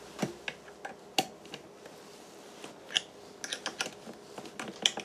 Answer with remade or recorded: recorded